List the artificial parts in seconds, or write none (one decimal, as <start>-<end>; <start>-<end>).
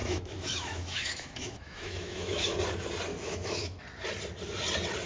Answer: 0.0-2.6; 3.1-3.8